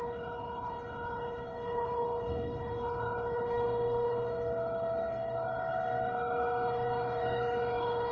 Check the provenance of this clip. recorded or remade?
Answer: remade